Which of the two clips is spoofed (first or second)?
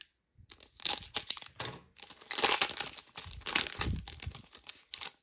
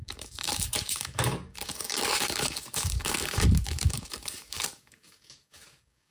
second